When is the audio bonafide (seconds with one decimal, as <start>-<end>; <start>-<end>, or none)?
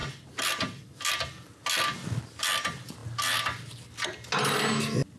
0.0-5.2